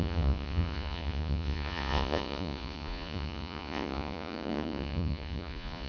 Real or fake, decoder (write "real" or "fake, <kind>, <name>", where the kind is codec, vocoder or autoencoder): fake, vocoder, Vocos